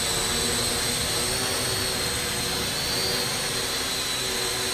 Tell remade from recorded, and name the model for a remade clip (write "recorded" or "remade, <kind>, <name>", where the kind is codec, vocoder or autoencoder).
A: recorded